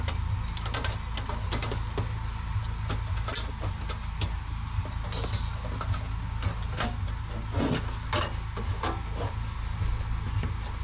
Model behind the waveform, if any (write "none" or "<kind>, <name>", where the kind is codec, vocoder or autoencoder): none